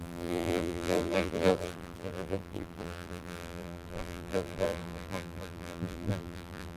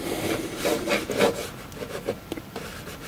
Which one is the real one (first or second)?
second